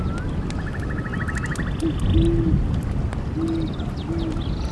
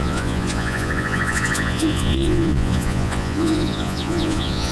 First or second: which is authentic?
first